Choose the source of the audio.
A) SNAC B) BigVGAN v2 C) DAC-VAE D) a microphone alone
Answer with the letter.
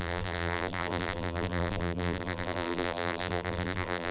B